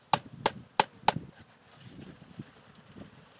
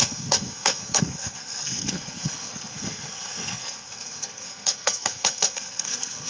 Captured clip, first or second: first